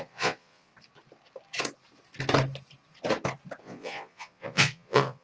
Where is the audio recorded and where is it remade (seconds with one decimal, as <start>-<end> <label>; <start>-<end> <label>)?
0.0-0.7 remade; 0.7-3.6 recorded; 3.6-5.2 remade